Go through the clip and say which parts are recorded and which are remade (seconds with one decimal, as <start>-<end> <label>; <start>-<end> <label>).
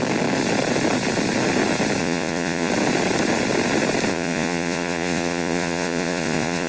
0.0-2.0 recorded; 2.0-2.7 remade; 2.7-4.1 recorded; 4.1-6.7 remade